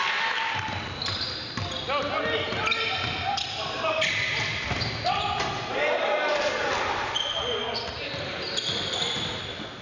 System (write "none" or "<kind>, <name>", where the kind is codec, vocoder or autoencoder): none